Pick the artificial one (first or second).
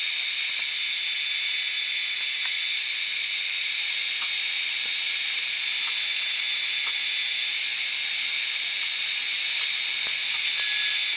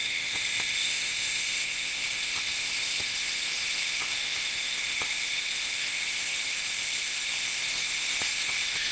second